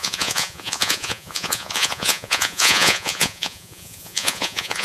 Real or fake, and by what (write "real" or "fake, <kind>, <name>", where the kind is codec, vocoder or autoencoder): fake, vocoder, Vocos